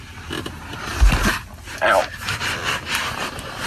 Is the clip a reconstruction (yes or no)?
no